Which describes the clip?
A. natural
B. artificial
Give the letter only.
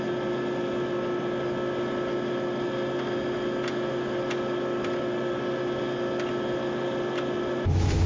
A